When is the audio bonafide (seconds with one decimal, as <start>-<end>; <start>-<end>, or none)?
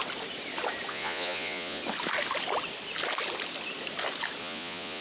0.0-0.9; 1.8-4.4